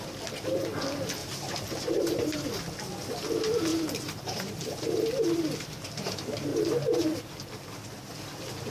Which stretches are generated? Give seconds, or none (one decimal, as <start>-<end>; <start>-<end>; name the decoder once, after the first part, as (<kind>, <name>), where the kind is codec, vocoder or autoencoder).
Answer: 1.2-2.6 (vocoder, BigVGAN v2); 3.7-6.1; 6.5-7.2